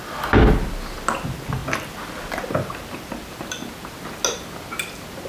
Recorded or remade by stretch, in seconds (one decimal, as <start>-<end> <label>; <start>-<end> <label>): 0.0-5.3 recorded

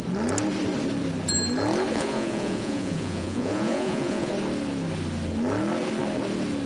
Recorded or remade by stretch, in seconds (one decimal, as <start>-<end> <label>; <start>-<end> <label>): 0.0-1.9 recorded; 1.9-4.3 remade; 4.3-6.7 recorded